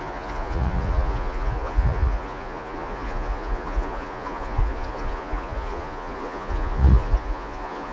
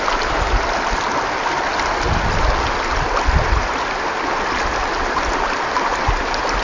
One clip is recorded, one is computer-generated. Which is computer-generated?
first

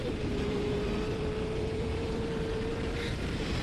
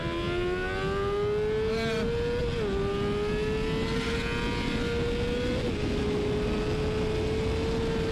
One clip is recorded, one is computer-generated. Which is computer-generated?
first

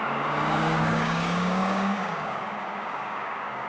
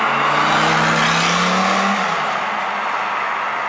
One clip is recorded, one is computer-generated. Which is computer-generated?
first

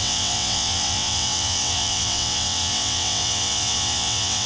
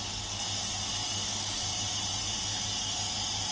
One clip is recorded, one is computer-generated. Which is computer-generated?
first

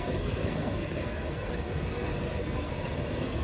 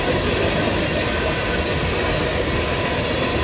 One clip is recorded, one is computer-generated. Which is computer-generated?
first